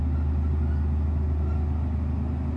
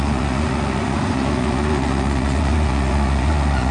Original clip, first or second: first